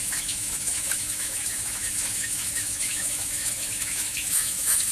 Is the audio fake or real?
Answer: fake